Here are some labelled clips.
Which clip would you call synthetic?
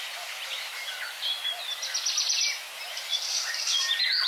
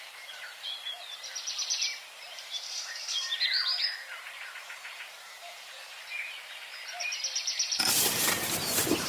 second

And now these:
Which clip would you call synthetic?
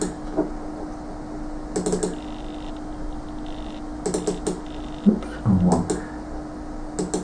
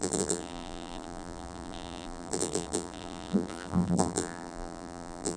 second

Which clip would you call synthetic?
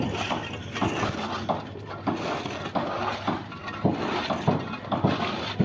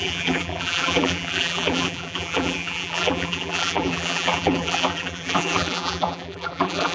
second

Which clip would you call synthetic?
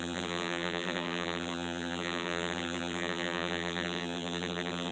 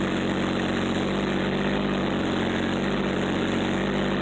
first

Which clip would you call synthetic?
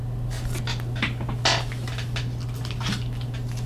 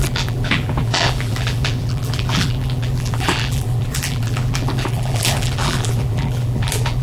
second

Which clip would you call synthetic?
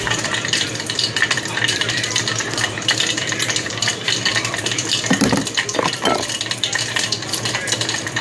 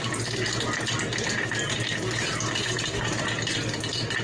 first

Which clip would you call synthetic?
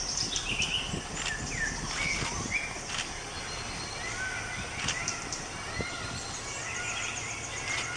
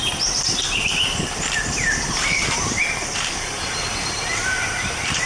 second